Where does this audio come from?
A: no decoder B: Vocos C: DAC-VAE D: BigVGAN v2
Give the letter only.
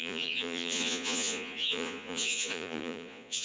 B